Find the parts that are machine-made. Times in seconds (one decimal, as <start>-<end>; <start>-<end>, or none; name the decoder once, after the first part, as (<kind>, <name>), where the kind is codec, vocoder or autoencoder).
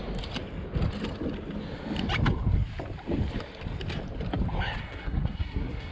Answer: 4.8-5.9 (codec, SNAC)